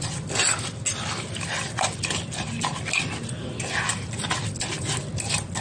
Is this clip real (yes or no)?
yes